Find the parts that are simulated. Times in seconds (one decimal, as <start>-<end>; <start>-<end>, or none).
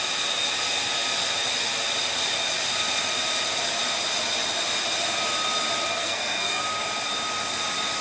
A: 5.9-6.6